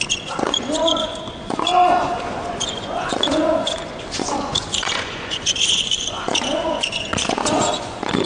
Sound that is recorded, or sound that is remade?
remade